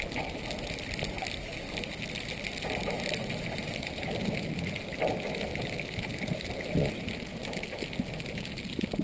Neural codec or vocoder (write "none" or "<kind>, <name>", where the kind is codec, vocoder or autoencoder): none